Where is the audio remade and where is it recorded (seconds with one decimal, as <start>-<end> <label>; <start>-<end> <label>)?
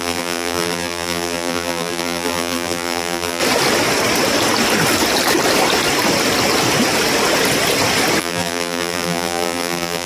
0.0-3.4 remade; 3.4-8.2 recorded; 8.2-10.1 remade